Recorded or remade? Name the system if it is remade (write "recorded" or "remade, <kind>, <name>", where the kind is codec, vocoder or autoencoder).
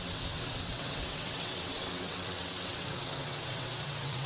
remade, vocoder, WaveNeXt